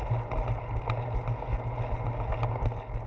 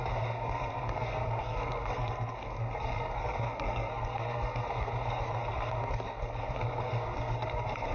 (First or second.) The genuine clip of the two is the first